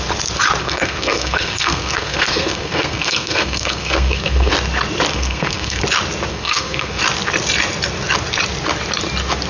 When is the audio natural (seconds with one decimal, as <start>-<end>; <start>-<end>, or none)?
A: 0.0-0.6; 4.5-5.1; 5.8-6.3; 7.0-9.5